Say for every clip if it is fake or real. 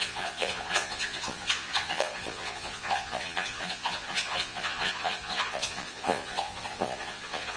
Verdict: fake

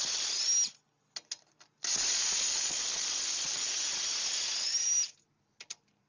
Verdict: real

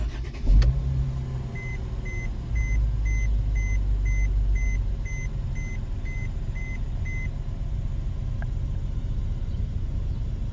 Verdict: real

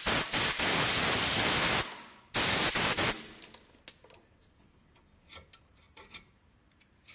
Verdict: real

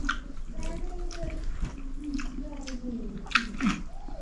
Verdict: real